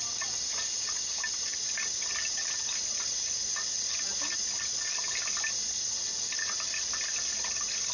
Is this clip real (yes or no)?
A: yes